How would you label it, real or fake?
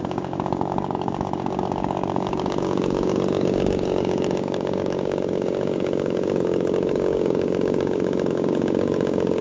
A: fake